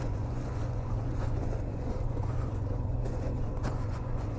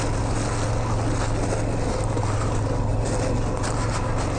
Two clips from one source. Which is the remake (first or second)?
first